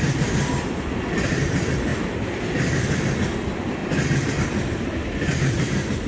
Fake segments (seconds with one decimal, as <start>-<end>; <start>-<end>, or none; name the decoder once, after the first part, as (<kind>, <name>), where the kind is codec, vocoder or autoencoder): 0.0-1.9 (vocoder, BigVGAN v2); 2.6-3.8; 4.3-6.1